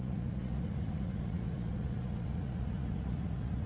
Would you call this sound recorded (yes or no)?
no